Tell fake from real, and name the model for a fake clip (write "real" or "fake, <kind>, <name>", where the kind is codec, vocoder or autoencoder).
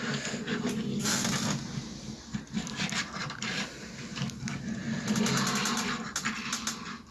real